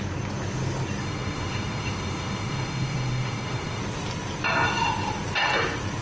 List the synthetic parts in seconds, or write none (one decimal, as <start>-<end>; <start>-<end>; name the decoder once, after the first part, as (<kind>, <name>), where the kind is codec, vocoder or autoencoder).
1.0-3.8 (autoencoder, DAC-VAE)